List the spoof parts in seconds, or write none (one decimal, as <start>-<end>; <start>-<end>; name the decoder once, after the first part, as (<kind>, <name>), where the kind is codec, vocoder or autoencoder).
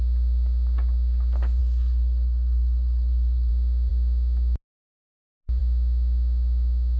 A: 1.6-3.5 (codec, SNAC)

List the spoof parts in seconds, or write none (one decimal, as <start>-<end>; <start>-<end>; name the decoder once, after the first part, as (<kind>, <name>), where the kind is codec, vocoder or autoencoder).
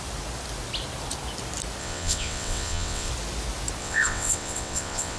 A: 1.8-3.1 (vocoder, WaveNeXt); 3.8-5.2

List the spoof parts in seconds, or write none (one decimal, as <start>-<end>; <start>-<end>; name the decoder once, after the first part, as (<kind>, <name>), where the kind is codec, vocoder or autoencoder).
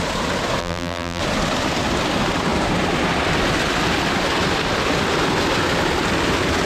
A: 0.6-1.2 (vocoder, BigVGAN v2)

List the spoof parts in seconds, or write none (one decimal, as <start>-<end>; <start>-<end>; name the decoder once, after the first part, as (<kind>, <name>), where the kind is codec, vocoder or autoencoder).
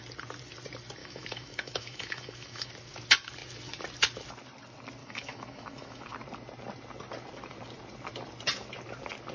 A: 1.0-2.7 (autoencoder, DAC-VAE); 5.0-6.1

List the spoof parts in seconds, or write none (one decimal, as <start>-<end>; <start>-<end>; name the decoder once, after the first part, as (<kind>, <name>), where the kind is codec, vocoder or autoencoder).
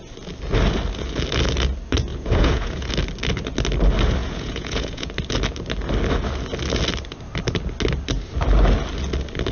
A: 2.1-2.9 (vocoder, Vocos); 4.2-5.1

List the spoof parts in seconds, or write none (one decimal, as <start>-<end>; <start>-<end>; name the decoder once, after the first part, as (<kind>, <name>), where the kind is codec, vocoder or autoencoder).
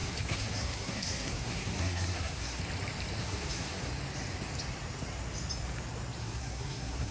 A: 0.0-2.6 (codec, SNAC); 3.2-3.9; 6.2-7.1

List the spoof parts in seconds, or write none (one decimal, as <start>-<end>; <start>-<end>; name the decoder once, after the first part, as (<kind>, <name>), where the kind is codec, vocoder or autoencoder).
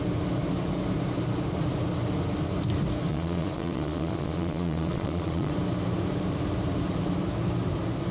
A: 3.1-5.5 (vocoder, Vocos)